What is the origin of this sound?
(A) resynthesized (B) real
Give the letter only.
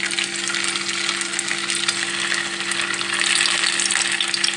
B